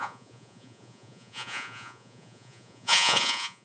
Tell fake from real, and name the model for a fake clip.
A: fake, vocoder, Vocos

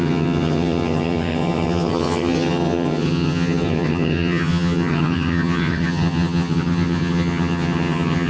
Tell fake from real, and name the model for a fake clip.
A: fake, vocoder, HiFi-GAN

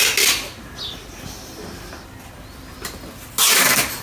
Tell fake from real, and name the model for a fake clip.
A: real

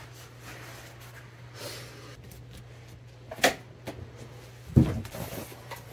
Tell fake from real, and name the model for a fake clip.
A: real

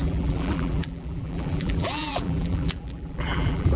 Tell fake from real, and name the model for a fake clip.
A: fake, vocoder, BigVGAN v2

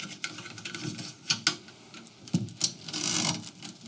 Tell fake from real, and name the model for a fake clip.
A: real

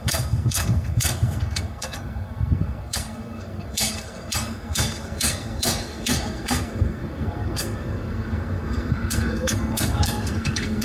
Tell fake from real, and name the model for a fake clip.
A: fake, codec, SNAC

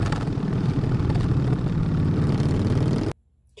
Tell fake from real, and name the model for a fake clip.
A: real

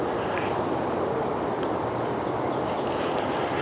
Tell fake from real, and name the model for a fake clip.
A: real